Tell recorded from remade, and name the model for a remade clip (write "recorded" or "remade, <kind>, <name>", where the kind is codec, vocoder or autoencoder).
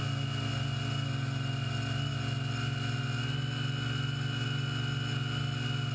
recorded